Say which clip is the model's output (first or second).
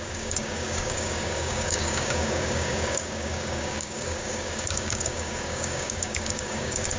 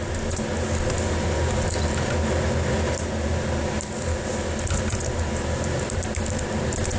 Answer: first